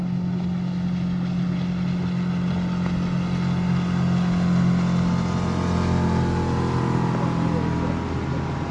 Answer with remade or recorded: recorded